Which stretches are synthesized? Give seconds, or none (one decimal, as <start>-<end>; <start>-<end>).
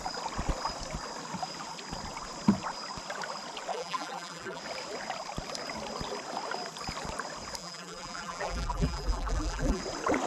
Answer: 3.7-4.6; 7.6-9.8